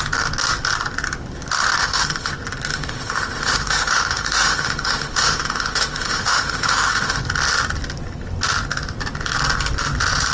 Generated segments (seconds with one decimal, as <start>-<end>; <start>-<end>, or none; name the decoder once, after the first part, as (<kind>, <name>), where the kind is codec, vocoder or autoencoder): 1.8-2.3 (autoencoder, DAC-VAE); 2.7-7.2